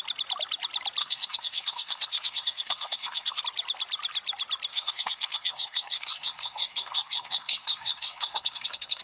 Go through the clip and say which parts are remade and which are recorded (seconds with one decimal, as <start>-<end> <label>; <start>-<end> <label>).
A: 0.0-1.0 recorded; 1.0-3.4 remade; 3.4-4.7 recorded; 4.7-9.0 remade